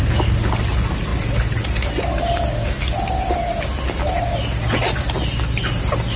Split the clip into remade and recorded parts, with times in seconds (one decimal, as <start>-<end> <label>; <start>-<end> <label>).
0.0-6.2 recorded